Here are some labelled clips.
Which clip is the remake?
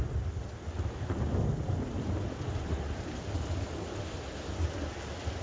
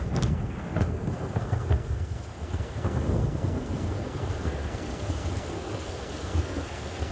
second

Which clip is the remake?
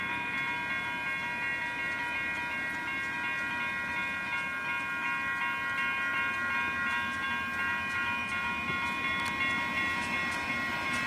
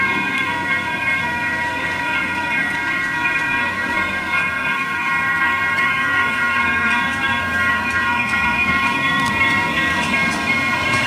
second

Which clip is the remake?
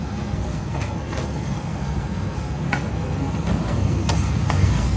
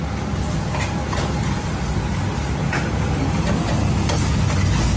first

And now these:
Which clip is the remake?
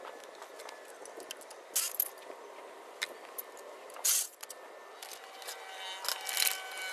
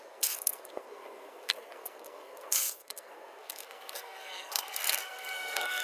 second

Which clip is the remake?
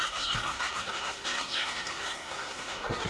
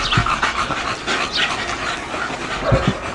first